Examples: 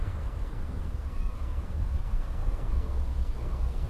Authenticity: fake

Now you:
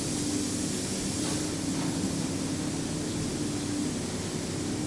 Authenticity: real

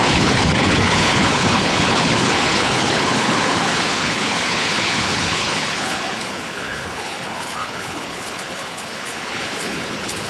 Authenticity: fake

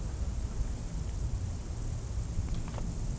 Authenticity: real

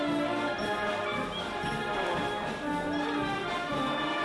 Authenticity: real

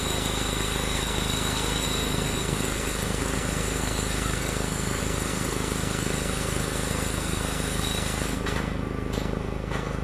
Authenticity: fake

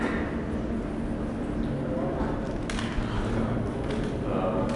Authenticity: real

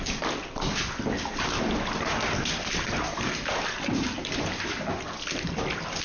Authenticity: real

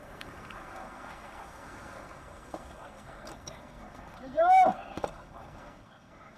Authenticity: fake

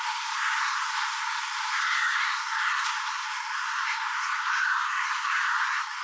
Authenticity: fake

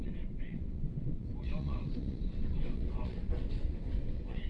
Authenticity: fake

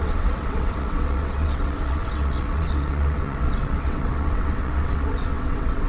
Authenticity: fake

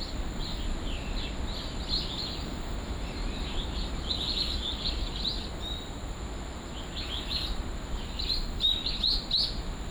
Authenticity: real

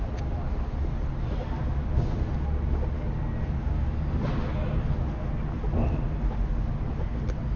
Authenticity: real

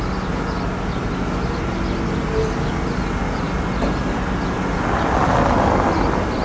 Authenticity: real